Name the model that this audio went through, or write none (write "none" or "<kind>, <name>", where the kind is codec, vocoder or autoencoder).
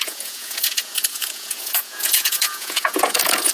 vocoder, Vocos